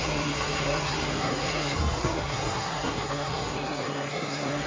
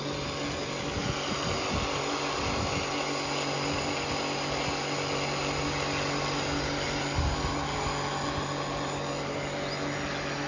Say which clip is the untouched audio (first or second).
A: second